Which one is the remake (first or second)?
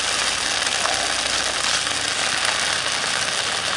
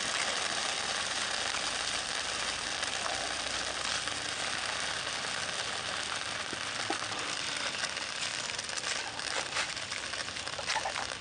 second